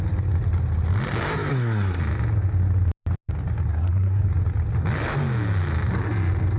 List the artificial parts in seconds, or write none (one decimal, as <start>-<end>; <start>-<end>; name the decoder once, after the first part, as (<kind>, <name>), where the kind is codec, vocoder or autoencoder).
1.5-2.0 (codec, SNAC); 3.7-4.2